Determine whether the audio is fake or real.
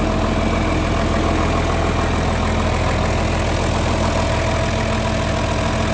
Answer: real